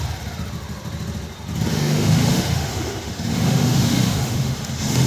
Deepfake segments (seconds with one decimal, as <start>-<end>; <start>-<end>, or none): 1.7-5.1